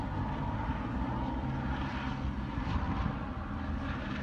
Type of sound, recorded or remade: recorded